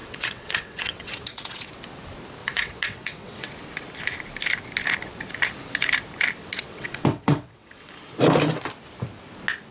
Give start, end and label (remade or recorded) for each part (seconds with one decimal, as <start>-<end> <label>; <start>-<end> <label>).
0.0-1.7 remade; 1.7-2.4 recorded; 2.4-3.5 remade; 3.5-6.4 recorded; 6.4-7.9 remade; 7.9-9.7 recorded